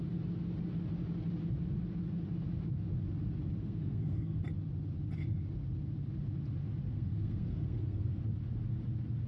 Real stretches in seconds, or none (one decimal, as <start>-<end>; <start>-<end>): 0.0-3.6; 4.4-6.9; 8.2-9.3